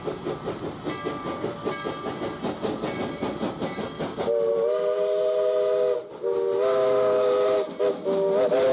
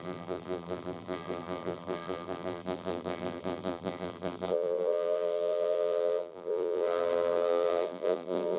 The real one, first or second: first